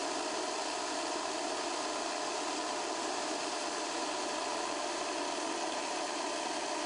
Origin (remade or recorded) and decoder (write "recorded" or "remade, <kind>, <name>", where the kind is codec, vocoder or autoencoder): recorded